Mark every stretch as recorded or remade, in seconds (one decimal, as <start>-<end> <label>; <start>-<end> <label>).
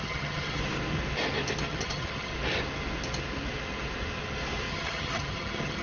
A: 0.0-0.6 remade; 0.6-1.6 recorded; 1.6-2.3 remade; 2.3-4.7 recorded; 4.7-5.8 remade